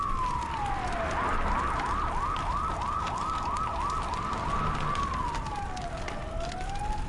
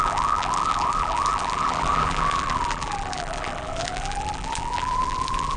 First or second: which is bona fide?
first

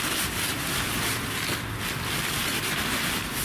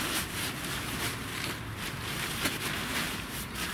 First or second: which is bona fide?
first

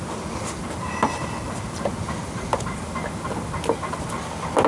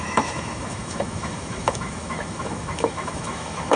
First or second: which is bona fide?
first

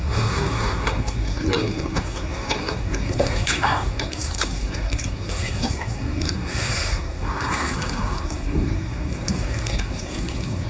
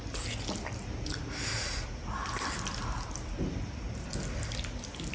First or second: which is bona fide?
second